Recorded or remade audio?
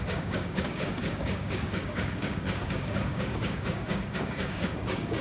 remade